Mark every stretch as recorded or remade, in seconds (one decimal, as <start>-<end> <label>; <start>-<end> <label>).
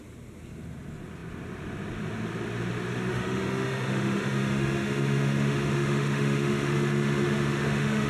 0.0-3.1 recorded; 3.1-8.1 remade